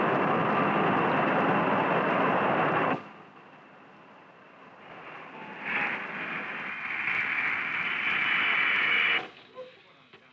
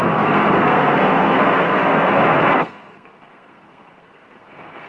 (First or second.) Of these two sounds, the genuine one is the first